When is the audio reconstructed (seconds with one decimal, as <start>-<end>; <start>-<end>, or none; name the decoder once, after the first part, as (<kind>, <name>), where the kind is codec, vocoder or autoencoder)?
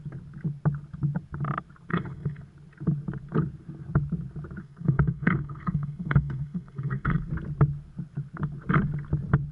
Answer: 1.9-2.4 (codec, SNAC); 4.6-7.3